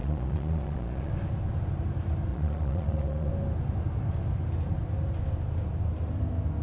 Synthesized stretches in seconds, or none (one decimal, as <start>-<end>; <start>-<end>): 0.0-1.1; 2.3-3.3